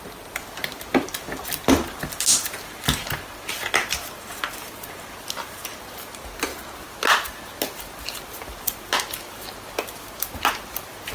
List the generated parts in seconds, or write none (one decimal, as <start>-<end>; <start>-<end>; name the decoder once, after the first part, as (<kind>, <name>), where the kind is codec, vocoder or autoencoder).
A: none

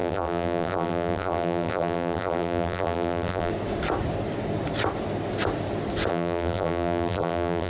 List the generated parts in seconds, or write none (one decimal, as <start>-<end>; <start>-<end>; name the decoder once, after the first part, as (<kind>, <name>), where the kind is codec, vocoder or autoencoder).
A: 0.0-3.5 (vocoder, BigVGAN v2); 6.1-7.7

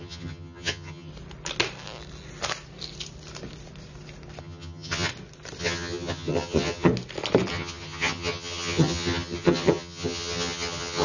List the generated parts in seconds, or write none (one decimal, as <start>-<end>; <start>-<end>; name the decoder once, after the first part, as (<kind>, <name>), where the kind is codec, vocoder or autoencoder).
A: 0.0-1.1 (vocoder, HiFi-GAN); 4.4-5.1; 5.6-6.9; 7.5-11.0